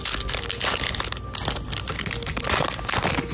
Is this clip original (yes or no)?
yes